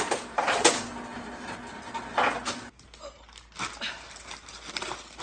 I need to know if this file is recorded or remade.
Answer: recorded